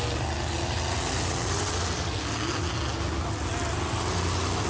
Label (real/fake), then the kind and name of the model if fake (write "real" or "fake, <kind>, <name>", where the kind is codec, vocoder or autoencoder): real